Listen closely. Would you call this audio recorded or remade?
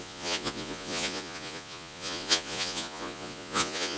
remade